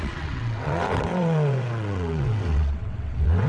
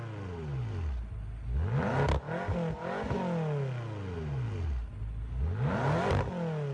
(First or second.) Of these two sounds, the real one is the second